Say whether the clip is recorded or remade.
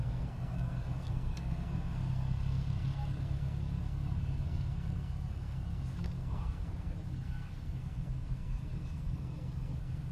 remade